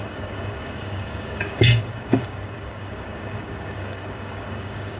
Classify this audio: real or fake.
fake